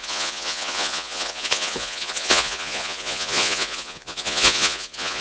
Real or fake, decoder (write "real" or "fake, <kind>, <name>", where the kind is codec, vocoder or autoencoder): fake, vocoder, Vocos